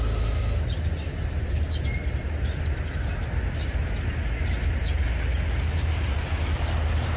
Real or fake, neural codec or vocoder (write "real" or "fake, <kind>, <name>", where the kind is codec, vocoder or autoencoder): real